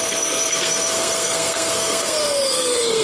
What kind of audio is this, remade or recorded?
remade